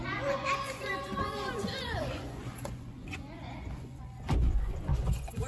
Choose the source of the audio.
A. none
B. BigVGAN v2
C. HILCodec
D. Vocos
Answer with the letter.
D